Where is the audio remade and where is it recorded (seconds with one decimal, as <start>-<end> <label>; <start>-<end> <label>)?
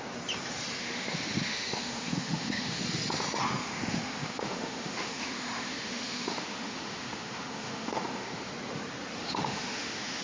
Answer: 0.0-0.8 recorded; 0.8-2.8 remade; 2.8-3.6 recorded; 3.6-8.5 remade; 8.5-9.2 recorded; 9.2-10.2 remade